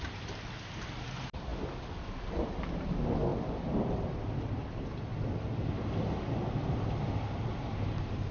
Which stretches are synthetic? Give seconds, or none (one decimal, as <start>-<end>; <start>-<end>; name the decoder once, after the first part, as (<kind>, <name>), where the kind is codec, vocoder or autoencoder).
none